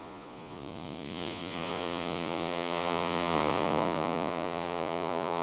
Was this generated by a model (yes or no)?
yes